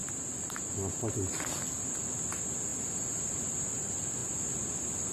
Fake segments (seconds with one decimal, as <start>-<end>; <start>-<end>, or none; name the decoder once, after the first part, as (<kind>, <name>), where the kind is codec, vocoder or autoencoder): 2.7-3.2 (vocoder, BigVGAN v2)